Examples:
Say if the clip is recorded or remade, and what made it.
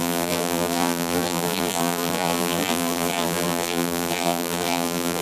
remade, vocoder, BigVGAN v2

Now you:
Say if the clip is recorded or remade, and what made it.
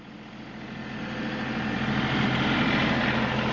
recorded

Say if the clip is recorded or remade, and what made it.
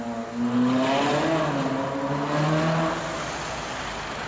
recorded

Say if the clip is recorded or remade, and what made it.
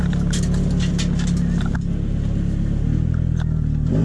recorded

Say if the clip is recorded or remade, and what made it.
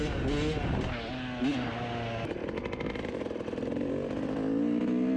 recorded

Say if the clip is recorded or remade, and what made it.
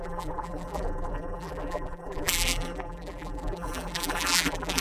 remade, vocoder, BigVGAN v2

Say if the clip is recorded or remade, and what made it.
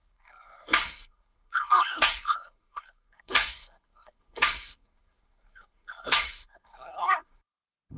remade, codec, SNAC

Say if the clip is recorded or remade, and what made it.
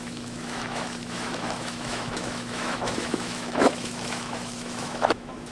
remade, autoencoder, DAC-VAE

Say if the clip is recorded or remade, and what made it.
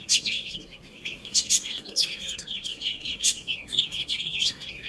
remade, codec, SNAC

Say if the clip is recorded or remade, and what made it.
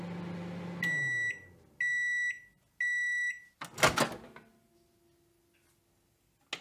recorded